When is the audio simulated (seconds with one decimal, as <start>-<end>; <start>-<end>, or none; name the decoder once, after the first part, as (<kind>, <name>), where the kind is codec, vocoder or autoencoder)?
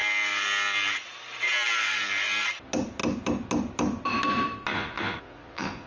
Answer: 4.7-5.9 (vocoder, Vocos)